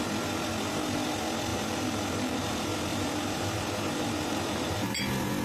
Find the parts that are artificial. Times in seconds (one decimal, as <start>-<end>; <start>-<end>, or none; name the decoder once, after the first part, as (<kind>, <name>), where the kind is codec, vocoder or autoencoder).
1.5-2.4 (vocoder, BigVGAN v2); 2.9-5.0